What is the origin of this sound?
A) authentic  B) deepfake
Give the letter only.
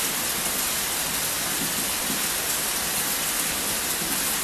A